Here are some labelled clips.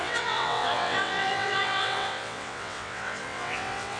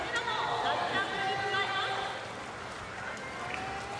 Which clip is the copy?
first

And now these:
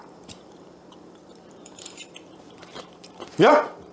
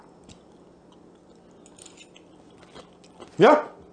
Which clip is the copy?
first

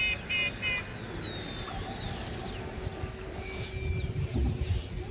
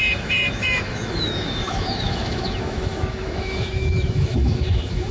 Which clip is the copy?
second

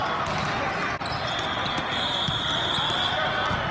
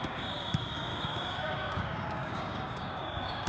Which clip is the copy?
second